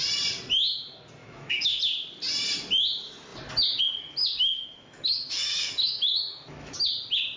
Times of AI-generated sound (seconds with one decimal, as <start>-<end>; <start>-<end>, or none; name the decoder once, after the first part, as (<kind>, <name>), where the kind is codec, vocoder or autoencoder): 1.2-1.8 (autoencoder, DAC-VAE); 4.2-6.7